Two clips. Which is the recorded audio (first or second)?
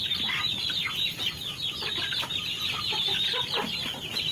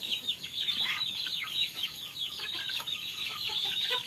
first